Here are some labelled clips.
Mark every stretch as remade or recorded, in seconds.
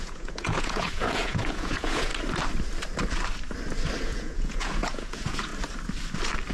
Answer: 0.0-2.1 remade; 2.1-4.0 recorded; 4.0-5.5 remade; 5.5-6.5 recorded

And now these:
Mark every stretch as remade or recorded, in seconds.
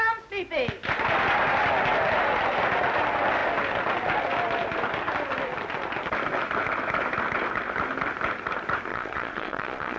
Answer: 0.0-8.9 recorded; 8.9-10.0 remade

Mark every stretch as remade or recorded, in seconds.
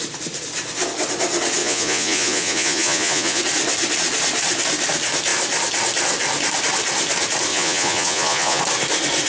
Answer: 0.0-1.6 recorded; 1.6-3.4 remade; 3.4-7.5 recorded; 7.5-8.6 remade; 8.6-9.3 recorded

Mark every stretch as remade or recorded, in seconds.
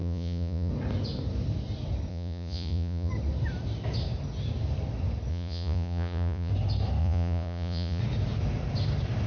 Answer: 0.0-0.7 remade; 0.7-2.1 recorded; 2.1-3.1 remade; 3.1-5.3 recorded; 5.3-6.5 remade; 6.5-7.0 recorded; 7.0-8.0 remade; 8.0-9.3 recorded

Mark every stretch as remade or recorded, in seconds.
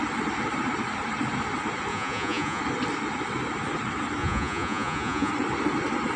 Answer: 0.0-1.9 recorded; 1.9-2.6 remade; 2.6-4.2 recorded; 4.2-5.3 remade; 5.3-6.2 recorded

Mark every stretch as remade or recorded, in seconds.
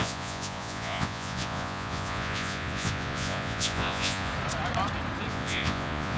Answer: 0.0-4.3 remade; 4.3-5.3 recorded; 5.3-6.2 remade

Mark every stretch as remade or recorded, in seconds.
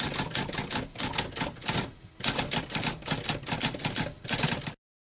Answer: 0.0-5.0 recorded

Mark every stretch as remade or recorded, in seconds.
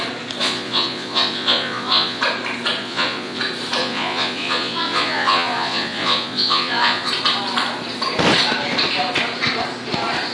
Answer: 0.0-0.4 recorded; 0.4-2.2 remade; 2.2-2.8 recorded; 2.8-3.4 remade; 3.4-3.8 recorded; 3.8-7.1 remade; 7.1-10.3 recorded